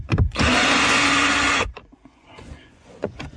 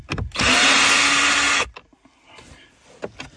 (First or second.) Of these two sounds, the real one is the second